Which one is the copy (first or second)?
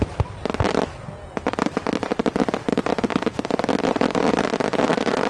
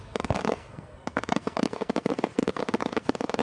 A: second